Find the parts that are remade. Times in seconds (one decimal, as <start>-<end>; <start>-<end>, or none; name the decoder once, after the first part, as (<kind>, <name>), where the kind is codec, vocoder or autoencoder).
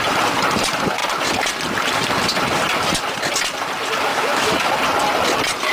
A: 4.1-4.7 (autoencoder, DAC-VAE)